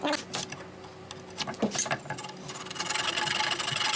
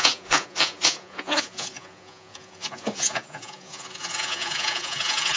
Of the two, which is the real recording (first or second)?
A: first